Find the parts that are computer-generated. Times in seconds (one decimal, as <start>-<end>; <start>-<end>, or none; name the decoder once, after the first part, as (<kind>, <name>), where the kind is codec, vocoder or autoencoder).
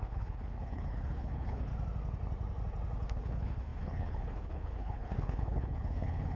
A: 0.0-1.7 (codec, HILCodec); 3.1-6.4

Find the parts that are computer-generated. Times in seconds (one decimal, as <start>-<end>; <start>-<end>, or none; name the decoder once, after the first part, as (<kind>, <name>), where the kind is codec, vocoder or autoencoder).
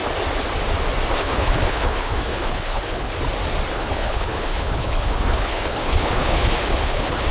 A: 1.1-3.1 (codec, HILCodec); 3.7-7.3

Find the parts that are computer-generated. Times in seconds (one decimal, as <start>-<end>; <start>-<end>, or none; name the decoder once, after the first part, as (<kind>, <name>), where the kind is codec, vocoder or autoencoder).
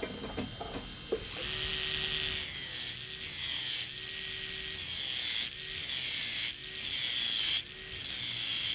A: none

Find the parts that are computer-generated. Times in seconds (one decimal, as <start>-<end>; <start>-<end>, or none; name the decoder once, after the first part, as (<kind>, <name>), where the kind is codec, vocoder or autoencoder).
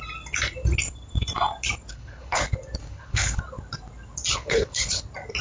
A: 1.9-2.4 (codec, HILCodec); 2.8-3.4; 4.3-5.0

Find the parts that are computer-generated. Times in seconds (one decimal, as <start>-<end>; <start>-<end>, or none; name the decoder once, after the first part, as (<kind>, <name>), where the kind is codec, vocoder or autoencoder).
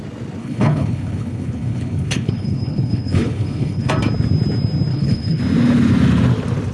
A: 0.4-3.9 (codec, HILCodec); 4.9-5.4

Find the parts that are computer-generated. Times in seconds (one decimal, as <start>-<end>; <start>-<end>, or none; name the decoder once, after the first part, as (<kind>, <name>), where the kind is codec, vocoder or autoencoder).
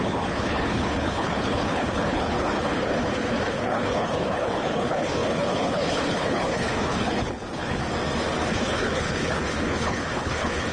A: 0.0-7.8 (codec, HILCodec); 8.5-10.7